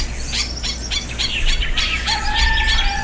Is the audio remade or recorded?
recorded